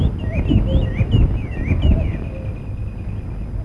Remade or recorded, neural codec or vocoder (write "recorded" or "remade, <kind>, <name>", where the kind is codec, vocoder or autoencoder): recorded